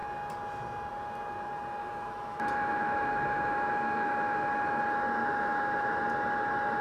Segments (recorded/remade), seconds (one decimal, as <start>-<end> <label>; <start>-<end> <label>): 0.0-1.8 recorded; 1.8-4.8 remade; 4.8-5.2 recorded; 5.2-6.0 remade; 6.0-6.8 recorded